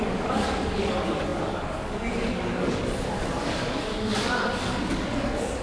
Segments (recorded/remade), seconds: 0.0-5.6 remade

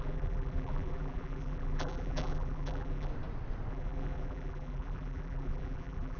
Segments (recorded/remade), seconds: 0.0-3.1 remade; 3.1-3.7 recorded; 3.7-6.2 remade

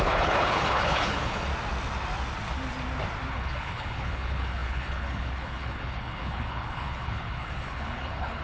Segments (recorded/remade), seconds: 0.0-1.5 remade; 1.5-3.3 recorded; 3.3-8.4 remade

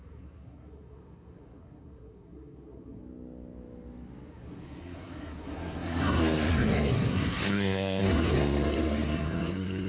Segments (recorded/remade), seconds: 0.0-3.0 remade; 3.0-4.3 recorded; 4.3-9.9 remade